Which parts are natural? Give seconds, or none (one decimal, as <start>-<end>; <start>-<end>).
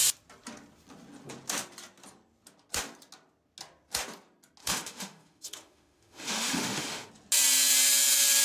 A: 0.0-4.6; 7.1-8.4